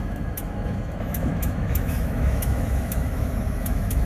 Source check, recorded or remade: remade